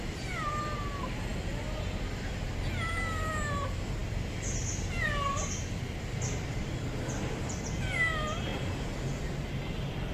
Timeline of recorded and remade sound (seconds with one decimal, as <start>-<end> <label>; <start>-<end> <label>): 0.0-4.0 recorded; 4.0-6.8 remade; 6.8-10.1 recorded